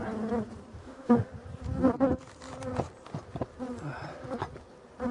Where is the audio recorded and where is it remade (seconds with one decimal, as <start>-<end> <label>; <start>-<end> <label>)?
0.0-0.8 recorded; 0.8-1.3 remade; 1.3-5.1 recorded

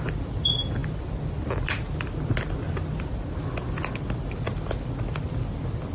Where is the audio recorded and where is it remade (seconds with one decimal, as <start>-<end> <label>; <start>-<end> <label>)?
0.0-5.9 recorded